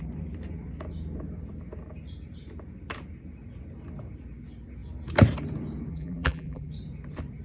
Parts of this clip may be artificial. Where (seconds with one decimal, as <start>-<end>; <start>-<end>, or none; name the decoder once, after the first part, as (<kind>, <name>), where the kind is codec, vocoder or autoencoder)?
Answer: 5.9-6.7 (vocoder, BigVGAN v2)